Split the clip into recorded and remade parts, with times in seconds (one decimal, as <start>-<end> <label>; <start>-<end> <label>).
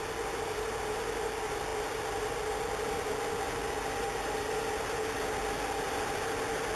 0.0-6.8 recorded